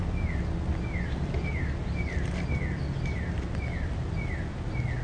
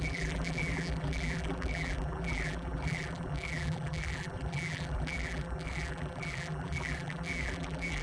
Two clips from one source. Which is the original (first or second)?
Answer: first